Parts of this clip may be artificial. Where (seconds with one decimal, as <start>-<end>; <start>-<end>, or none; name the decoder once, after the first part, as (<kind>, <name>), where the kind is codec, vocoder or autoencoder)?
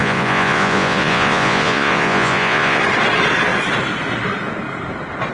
0.0-2.8 (vocoder, Vocos)